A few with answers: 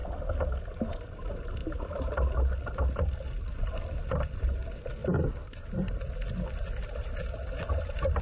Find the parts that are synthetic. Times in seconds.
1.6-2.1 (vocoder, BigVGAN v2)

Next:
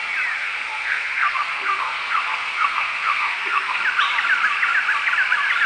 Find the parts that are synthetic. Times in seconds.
0.4-3.8 (codec, SNAC)

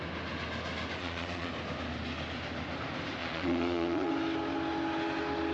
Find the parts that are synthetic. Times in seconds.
1.0-1.5 (vocoder, Vocos); 3.2-4.1

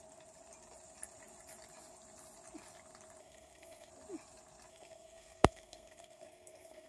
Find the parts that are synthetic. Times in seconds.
3.2-3.9 (codec, SNAC); 4.7-6.9

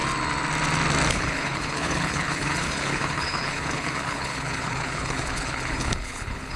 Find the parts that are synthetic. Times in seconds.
1.1-6.6 (codec, HILCodec)

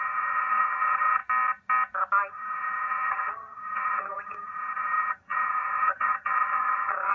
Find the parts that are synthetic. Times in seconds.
0.0-1.2 (vocoder, HiFi-GAN); 2.3-7.1